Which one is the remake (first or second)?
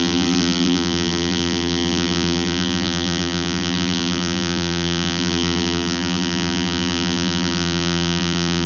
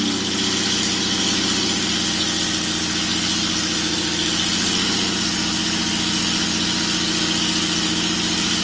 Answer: first